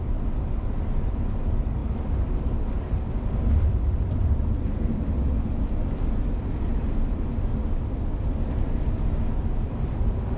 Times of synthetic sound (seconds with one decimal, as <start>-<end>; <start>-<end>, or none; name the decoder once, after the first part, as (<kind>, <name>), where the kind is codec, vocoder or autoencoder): 0.0-7.3 (vocoder, BigVGAN v2); 9.6-10.4

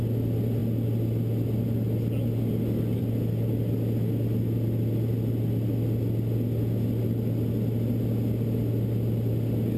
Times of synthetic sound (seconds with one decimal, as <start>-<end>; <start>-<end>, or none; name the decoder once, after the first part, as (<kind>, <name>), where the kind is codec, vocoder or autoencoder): none